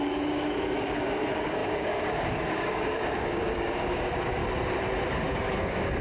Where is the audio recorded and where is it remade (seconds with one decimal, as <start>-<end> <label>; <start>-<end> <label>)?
0.0-4.4 remade; 4.4-5.1 recorded; 5.1-6.0 remade